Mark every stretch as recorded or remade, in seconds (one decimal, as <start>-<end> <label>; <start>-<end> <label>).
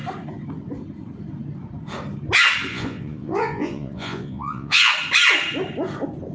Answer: 0.0-2.7 recorded; 2.7-4.9 remade; 4.9-6.3 recorded